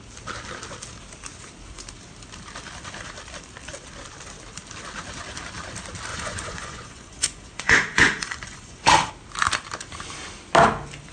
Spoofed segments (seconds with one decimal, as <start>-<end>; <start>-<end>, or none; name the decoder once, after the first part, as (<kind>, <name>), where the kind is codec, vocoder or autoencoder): 6.1-9.1 (vocoder, Vocos)